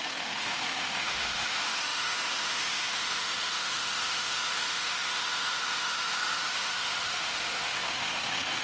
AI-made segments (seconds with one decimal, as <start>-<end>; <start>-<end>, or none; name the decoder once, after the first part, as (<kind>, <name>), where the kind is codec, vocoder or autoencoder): 0.0-8.6 (autoencoder, DAC-VAE)